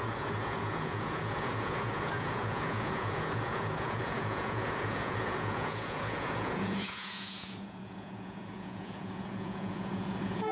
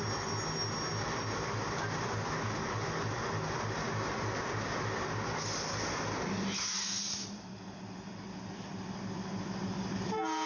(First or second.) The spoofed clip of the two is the first